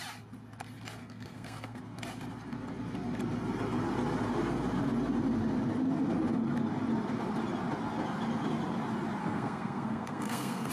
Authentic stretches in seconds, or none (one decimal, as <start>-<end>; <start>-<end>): 0.0-1.0; 1.8-9.2